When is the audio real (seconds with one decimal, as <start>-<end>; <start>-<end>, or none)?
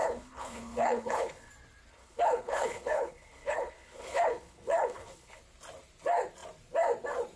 1.5-1.9; 5.4-7.4